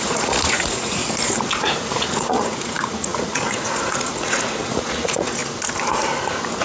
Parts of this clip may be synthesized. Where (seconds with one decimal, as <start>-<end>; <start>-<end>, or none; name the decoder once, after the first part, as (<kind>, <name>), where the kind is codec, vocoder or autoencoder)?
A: 0.0-1.0 (vocoder, Vocos); 1.6-5.4